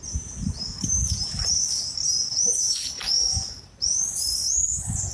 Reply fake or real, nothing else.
real